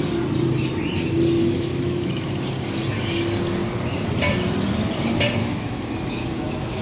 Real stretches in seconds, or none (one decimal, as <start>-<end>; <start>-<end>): 0.0-1.4; 2.3-5.4